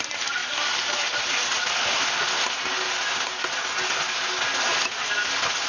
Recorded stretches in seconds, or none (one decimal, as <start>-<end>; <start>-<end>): 0.0-5.7